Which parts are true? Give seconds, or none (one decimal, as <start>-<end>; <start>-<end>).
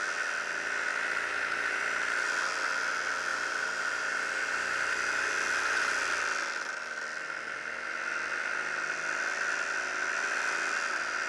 0.0-0.9; 1.8-3.3; 5.3-7.1; 7.7-11.3